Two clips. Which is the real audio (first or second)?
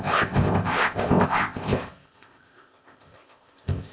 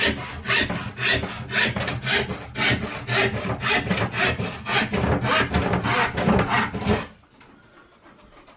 second